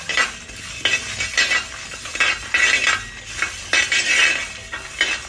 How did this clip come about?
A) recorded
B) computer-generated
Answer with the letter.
A